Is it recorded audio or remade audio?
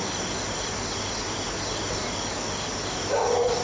recorded